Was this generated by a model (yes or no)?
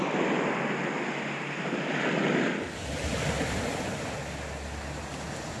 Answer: no